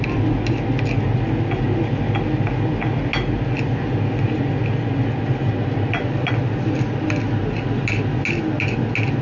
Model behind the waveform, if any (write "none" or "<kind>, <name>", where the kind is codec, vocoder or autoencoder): none